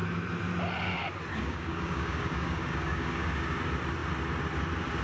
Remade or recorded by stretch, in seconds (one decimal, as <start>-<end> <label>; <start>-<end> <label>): 0.0-1.3 recorded; 1.3-3.6 remade; 3.6-5.0 recorded